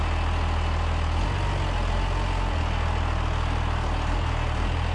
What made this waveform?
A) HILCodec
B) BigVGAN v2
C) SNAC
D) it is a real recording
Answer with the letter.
D